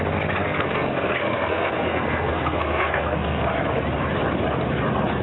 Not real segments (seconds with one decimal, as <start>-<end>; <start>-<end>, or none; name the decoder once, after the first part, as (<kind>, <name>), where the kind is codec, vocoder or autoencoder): 0.4-3.5 (codec, SNAC)